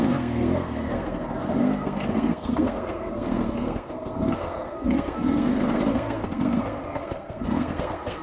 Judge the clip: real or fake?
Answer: fake